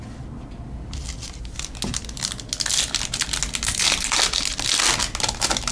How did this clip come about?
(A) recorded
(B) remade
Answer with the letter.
A